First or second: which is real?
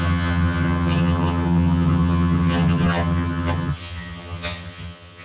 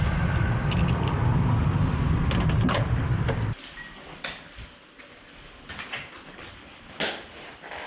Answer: second